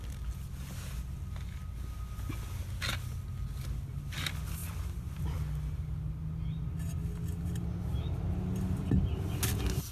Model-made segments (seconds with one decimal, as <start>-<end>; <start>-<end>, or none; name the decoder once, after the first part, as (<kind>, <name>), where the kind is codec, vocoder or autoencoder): none